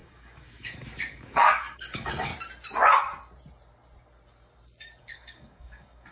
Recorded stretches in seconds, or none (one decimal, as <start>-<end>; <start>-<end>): 2.3-5.0